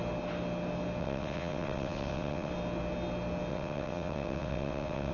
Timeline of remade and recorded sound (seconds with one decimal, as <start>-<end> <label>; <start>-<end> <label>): 0.0-1.0 recorded; 1.0-2.5 remade; 2.5-3.5 recorded; 3.5-5.1 remade